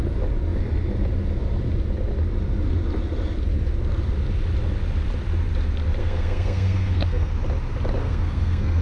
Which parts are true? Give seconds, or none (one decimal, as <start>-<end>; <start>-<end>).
0.0-6.0; 7.3-8.0